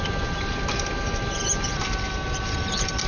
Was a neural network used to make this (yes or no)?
no